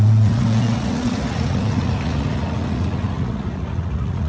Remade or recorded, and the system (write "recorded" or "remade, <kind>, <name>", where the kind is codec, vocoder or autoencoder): remade, vocoder, Vocos